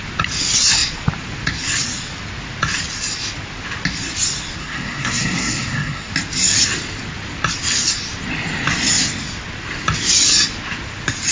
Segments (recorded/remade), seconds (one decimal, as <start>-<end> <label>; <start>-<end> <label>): 0.0-4.6 recorded; 4.6-6.1 remade; 6.1-11.3 recorded